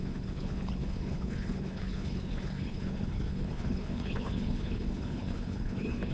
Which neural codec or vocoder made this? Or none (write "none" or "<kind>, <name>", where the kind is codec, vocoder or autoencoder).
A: codec, HILCodec